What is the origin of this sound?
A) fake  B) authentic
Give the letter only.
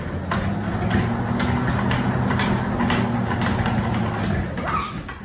B